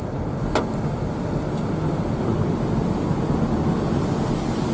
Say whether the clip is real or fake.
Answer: real